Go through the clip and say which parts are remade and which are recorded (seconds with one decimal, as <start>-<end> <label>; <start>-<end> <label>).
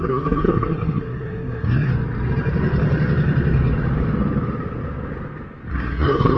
0.0-1.9 remade; 1.9-5.7 recorded; 5.7-6.4 remade